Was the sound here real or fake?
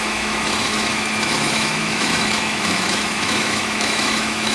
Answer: fake